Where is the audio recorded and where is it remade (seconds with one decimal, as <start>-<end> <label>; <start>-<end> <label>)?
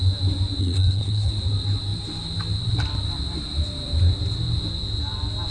0.0-0.6 recorded; 0.6-1.3 remade; 1.3-5.5 recorded